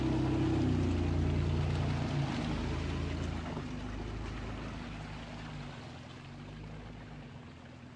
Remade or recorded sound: recorded